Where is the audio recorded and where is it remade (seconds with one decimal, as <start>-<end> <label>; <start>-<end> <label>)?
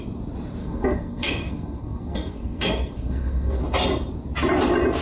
0.0-0.6 recorded; 0.6-3.6 remade; 3.6-5.0 recorded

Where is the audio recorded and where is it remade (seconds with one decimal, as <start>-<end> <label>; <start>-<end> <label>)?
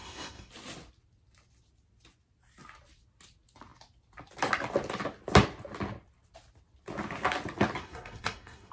0.0-0.5 remade; 0.5-7.8 recorded; 7.8-8.7 remade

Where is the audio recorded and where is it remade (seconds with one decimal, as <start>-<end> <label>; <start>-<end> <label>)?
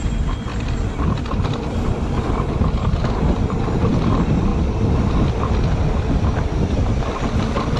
0.0-7.8 recorded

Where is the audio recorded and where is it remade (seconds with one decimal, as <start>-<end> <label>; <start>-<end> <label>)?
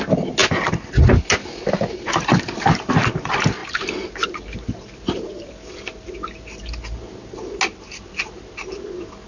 0.0-9.3 recorded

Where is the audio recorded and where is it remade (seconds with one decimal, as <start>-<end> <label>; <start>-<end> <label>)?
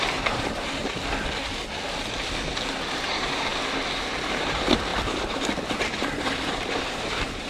0.0-0.8 remade; 0.8-2.9 recorded; 2.9-3.5 remade; 3.5-4.3 recorded; 4.3-7.5 remade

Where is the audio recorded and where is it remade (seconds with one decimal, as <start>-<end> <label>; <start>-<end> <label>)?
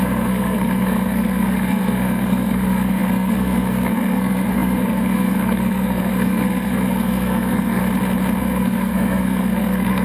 0.0-7.8 remade; 7.8-8.4 recorded; 8.4-10.0 remade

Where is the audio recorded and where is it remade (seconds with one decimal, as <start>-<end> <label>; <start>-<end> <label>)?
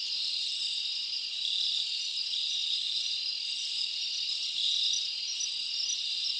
0.0-6.4 recorded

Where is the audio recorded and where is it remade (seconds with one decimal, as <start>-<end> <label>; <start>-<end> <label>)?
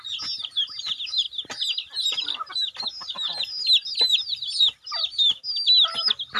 0.0-6.4 recorded